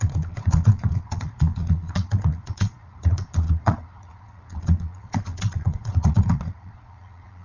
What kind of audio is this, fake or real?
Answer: fake